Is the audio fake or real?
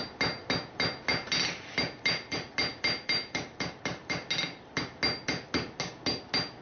real